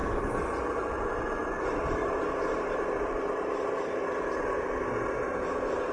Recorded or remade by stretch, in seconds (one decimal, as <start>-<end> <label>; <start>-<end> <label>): 0.0-5.9 recorded